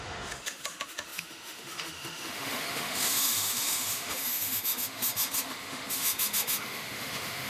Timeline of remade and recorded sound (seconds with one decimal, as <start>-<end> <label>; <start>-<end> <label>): 0.0-7.5 remade